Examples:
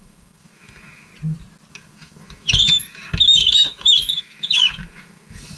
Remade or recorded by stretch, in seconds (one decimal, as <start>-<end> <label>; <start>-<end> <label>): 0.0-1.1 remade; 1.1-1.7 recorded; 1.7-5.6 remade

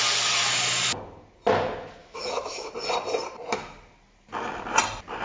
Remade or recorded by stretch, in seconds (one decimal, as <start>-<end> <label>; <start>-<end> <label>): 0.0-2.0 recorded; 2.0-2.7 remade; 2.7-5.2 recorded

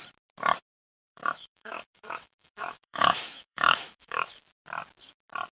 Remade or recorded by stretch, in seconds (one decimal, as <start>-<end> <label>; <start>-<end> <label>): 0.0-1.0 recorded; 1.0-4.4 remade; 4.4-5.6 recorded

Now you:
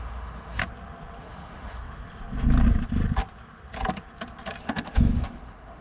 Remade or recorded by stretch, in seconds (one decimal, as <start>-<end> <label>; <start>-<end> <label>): 0.0-0.6 remade; 0.6-1.2 recorded; 1.2-1.8 remade; 1.8-4.6 recorded; 4.6-5.8 remade

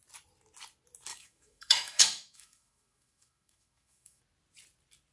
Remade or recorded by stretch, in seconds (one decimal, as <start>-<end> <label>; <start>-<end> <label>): 0.0-1.1 recorded; 1.1-4.2 remade; 4.2-5.1 recorded

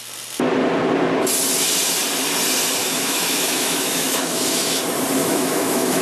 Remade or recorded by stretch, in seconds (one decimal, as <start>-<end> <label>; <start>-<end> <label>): 0.0-2.8 recorded; 2.8-4.8 remade; 4.8-5.2 recorded; 5.2-6.0 remade